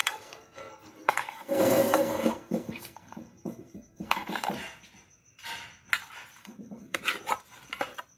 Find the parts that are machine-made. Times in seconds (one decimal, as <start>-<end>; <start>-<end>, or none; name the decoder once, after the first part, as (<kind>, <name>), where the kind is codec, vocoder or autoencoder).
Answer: 0.0-4.5 (codec, SNAC); 6.4-7.0